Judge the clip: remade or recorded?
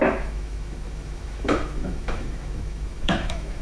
remade